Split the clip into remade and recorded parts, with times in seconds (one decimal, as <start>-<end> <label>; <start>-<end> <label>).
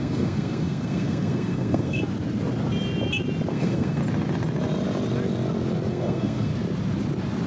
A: 0.0-2.0 remade; 2.0-3.5 recorded; 3.5-4.0 remade; 4.0-5.9 recorded; 5.9-6.5 remade; 6.5-7.5 recorded